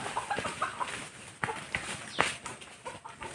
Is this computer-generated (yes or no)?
no